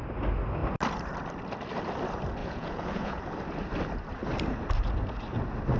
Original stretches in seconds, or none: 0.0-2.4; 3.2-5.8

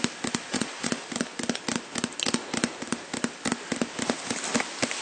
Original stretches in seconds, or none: 0.0-0.4; 0.9-5.0

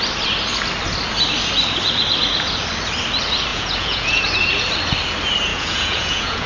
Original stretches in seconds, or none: 0.0-3.5; 4.2-5.5